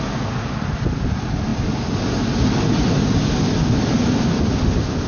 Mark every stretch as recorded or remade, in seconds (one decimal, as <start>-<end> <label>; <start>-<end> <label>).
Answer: 0.0-5.1 recorded